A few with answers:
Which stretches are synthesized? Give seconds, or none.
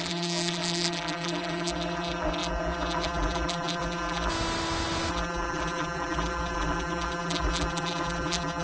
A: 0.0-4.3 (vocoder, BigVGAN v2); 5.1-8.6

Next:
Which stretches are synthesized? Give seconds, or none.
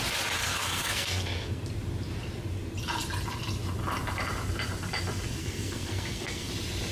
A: 0.4-1.6 (codec, SNAC); 5.4-6.5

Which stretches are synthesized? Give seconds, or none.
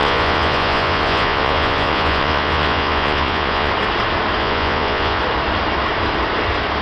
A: 0.0-3.7 (vocoder, Vocos); 4.4-5.2